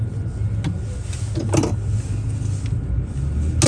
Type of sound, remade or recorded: recorded